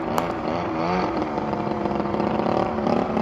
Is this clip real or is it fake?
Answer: fake